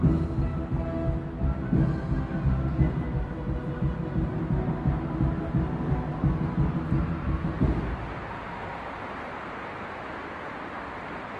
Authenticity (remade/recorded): recorded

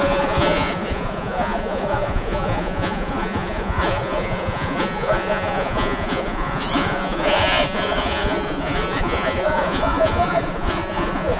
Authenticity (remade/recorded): remade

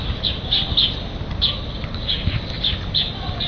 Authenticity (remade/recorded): recorded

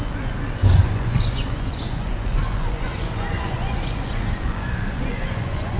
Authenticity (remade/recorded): remade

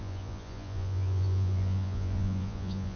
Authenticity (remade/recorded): remade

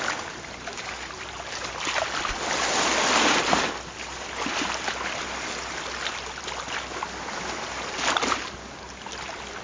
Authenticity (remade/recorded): recorded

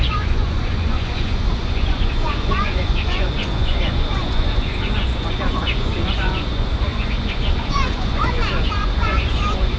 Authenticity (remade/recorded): remade